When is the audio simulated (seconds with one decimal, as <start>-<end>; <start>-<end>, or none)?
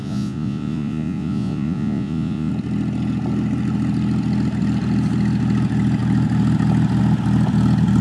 0.0-2.5